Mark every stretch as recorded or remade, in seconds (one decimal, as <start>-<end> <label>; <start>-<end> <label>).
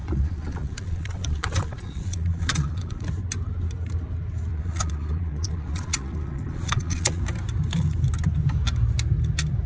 0.0-3.1 remade; 3.1-4.5 recorded; 4.5-7.2 remade; 7.2-9.7 recorded